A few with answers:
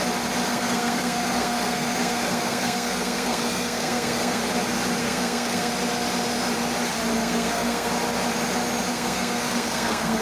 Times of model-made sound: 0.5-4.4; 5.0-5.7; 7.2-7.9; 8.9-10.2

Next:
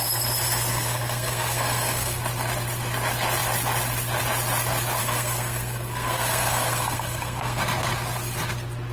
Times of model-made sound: 0.7-2.2; 5.0-7.6

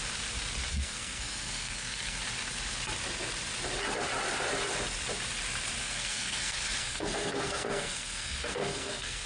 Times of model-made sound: 0.7-2.2; 5.8-9.3

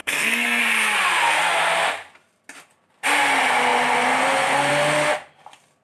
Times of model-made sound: 0.0-0.6

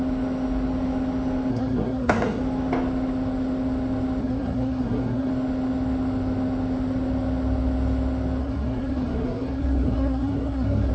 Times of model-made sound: 1.5-2.4; 4.2-5.3; 8.4-10.9

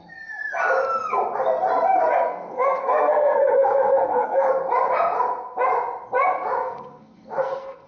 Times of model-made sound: 2.3-4.6; 6.6-7.9

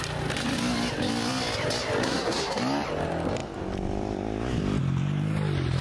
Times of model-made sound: 2.0-2.6